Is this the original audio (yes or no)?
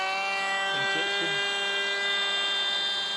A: yes